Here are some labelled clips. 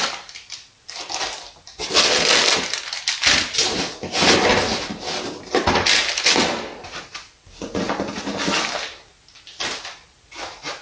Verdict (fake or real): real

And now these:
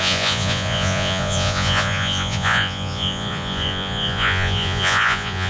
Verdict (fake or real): fake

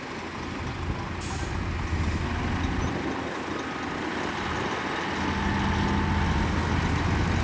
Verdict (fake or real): real